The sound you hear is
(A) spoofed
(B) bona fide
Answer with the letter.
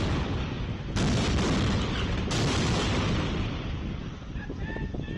B